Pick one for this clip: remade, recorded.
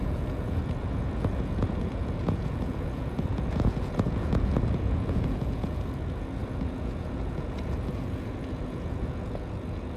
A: remade